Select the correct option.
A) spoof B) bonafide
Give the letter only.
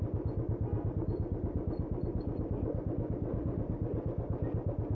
B